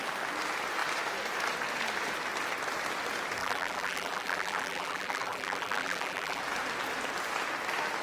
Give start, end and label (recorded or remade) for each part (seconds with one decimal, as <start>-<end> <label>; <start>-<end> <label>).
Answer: 0.0-3.4 recorded; 3.4-6.4 remade; 6.4-8.0 recorded